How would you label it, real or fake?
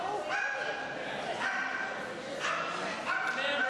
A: real